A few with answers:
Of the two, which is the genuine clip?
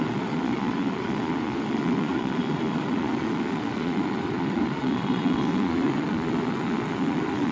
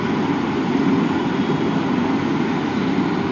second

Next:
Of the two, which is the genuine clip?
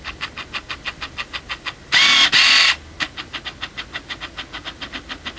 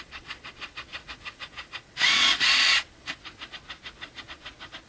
first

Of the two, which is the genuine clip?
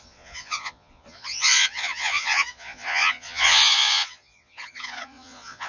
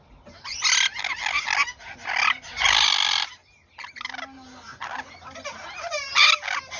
second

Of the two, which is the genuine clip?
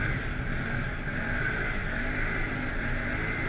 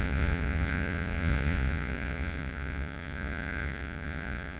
first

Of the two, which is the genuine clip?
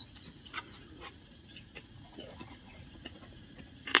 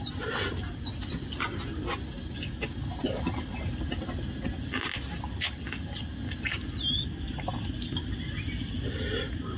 second